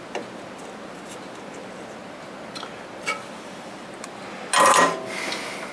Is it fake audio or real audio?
real